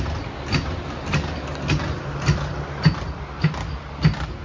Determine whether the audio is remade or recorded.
recorded